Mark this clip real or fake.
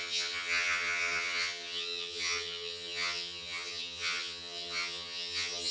fake